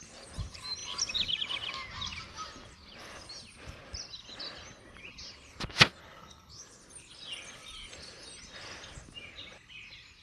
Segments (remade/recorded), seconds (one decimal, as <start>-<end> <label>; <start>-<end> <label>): 0.0-6.0 recorded; 6.0-6.5 remade; 6.5-10.2 recorded